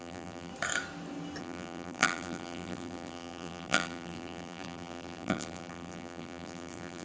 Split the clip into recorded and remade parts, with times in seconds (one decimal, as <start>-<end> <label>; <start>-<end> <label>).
0.0-0.5 remade; 0.5-1.4 recorded; 1.4-7.0 remade

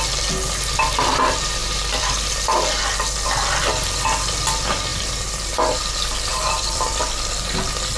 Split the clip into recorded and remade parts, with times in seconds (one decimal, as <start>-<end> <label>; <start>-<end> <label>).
0.0-1.6 recorded; 1.6-2.3 remade; 2.3-4.9 recorded; 4.9-5.8 remade; 5.8-6.3 recorded; 6.3-7.0 remade; 7.0-8.0 recorded

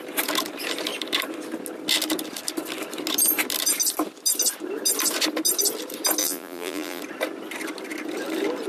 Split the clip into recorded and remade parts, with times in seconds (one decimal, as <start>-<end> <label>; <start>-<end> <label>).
0.0-6.2 recorded; 6.2-7.0 remade; 7.0-8.7 recorded

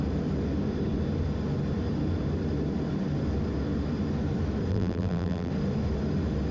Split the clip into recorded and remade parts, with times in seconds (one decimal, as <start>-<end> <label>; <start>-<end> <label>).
0.0-4.7 recorded; 4.7-5.5 remade; 5.5-6.5 recorded

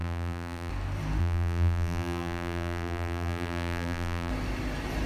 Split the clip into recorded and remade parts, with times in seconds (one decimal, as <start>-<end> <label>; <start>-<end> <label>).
0.0-0.7 remade; 0.7-1.2 recorded; 1.2-4.3 remade; 4.3-5.1 recorded